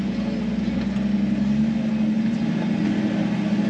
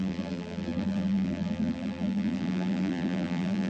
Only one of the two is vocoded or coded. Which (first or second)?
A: second